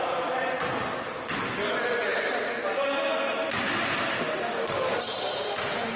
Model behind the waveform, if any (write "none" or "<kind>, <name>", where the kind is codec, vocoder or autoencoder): none